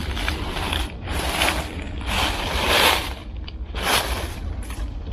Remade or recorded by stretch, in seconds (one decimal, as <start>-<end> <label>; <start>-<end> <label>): 0.0-1.8 remade; 1.8-3.2 recorded; 3.2-5.1 remade